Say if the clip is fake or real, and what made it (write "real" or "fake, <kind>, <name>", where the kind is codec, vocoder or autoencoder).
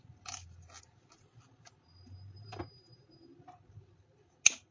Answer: real